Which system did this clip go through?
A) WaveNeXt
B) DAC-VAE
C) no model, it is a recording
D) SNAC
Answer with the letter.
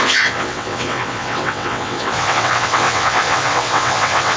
A